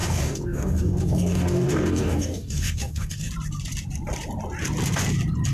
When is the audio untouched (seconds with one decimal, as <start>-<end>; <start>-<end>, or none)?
3.3-5.5